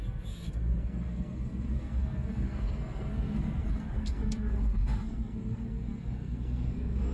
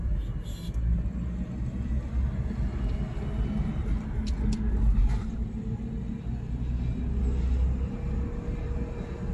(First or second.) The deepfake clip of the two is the first